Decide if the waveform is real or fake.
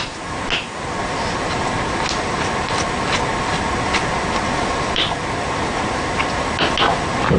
real